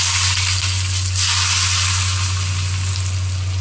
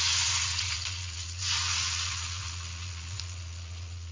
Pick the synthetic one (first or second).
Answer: second